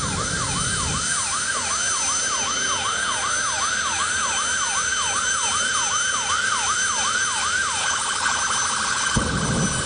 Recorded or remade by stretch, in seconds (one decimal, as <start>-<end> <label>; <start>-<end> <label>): 0.0-7.8 recorded; 7.8-8.4 remade; 8.4-8.9 recorded; 8.9-9.4 remade; 9.4-9.9 recorded